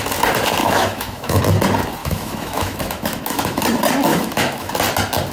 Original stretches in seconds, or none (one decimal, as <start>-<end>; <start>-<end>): 0.0-0.6; 1.4-2.0; 3.6-4.1; 4.7-5.3